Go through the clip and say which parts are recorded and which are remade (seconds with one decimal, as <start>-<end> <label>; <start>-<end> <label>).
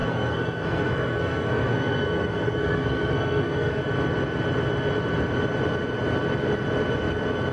0.0-3.8 remade; 3.8-7.5 recorded